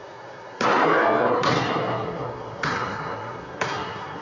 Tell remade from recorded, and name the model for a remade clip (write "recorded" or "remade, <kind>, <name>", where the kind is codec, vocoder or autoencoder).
remade, codec, SNAC